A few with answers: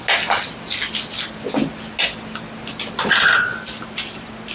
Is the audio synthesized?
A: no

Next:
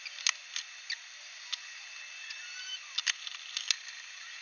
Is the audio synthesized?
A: no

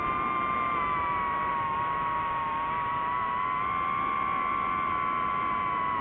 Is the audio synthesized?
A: no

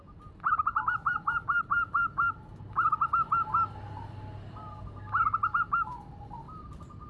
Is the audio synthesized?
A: no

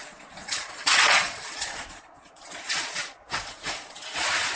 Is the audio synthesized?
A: yes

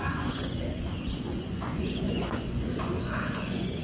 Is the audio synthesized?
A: yes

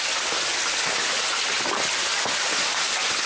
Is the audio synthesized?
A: no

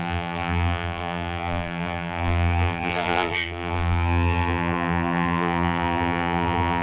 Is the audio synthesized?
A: yes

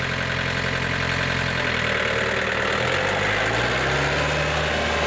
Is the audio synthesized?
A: no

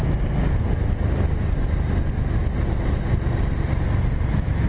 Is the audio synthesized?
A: no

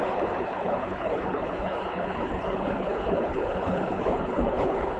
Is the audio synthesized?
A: yes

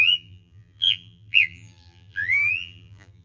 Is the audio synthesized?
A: yes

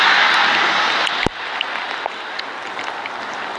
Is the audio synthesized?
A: no